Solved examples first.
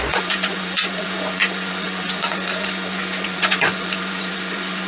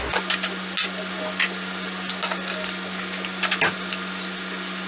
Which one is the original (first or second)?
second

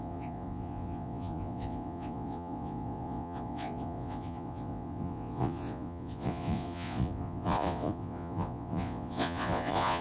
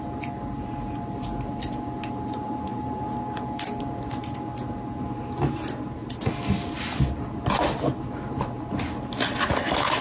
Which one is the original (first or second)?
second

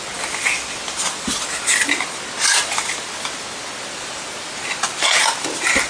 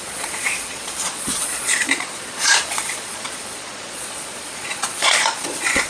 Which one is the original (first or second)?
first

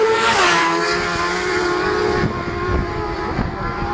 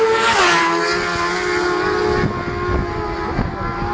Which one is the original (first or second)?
second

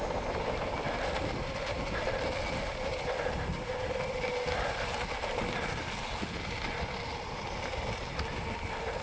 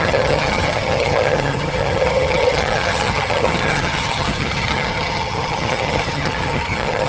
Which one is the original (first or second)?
first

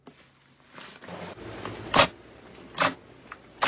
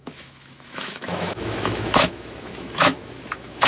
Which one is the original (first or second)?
first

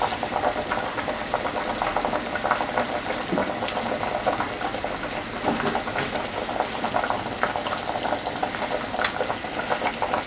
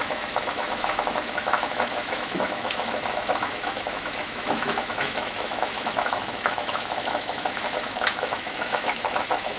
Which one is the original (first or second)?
first